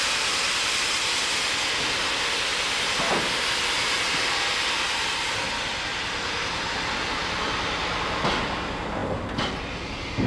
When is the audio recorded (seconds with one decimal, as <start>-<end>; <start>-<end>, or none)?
0.0-10.3